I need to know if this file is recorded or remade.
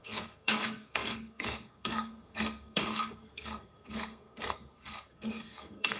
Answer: remade